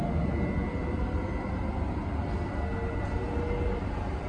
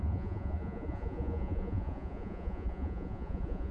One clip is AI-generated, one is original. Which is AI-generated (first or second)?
second